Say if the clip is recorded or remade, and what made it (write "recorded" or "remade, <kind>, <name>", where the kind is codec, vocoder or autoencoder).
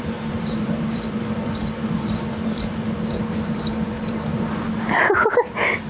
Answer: remade, vocoder, BigVGAN v2